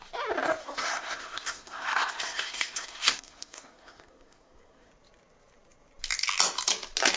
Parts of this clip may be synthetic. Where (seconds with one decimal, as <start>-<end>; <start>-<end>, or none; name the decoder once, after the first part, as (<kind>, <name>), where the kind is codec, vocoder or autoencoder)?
0.6-4.9 (codec, SNAC)